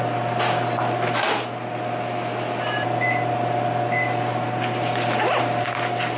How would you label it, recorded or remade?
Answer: recorded